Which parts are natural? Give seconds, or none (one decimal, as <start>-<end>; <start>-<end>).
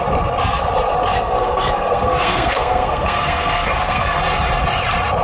0.0-1.1; 4.2-5.2